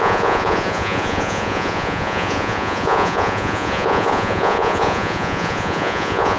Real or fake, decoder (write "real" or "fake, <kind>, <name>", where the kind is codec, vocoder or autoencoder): fake, vocoder, Vocos